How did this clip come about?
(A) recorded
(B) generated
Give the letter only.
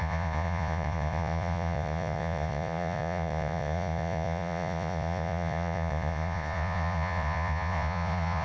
B